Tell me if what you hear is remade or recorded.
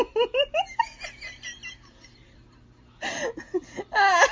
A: recorded